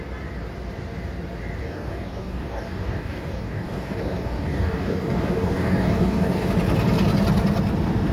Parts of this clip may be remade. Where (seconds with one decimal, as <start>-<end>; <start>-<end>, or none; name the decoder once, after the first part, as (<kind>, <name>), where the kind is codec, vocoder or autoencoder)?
1.6-6.5 (codec, DAC)